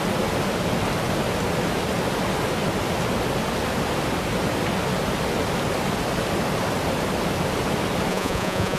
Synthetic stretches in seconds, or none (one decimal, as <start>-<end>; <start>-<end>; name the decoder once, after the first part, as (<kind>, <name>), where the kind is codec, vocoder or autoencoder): 8.1-8.8 (vocoder, Vocos)